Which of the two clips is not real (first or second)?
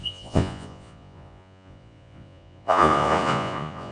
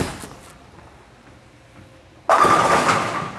first